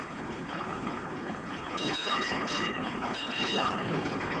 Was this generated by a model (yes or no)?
yes